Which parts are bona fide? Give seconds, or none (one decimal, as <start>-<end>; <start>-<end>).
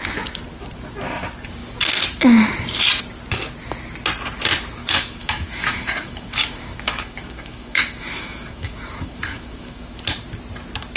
0.0-4.8; 10.0-11.0